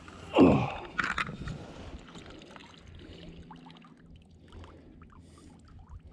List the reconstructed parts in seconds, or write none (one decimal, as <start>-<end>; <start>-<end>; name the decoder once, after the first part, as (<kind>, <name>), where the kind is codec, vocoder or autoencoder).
none